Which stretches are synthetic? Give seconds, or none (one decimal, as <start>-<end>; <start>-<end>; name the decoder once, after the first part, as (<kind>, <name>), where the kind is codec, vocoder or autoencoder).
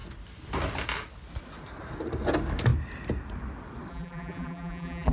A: 3.9-5.1 (vocoder, BigVGAN v2)